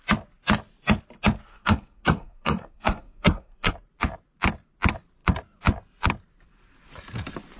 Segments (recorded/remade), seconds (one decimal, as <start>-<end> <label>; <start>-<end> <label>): 0.0-1.5 recorded; 1.5-3.7 remade; 3.7-7.6 recorded